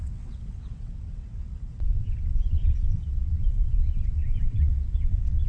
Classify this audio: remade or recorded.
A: remade